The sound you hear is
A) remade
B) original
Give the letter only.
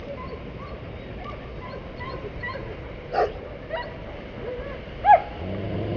B